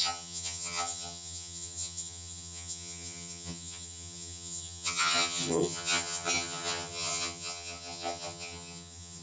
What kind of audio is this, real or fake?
fake